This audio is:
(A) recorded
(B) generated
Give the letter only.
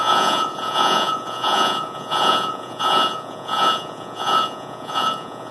B